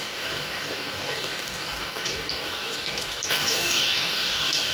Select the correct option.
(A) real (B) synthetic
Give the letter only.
B